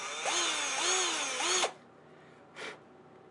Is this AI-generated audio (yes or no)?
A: no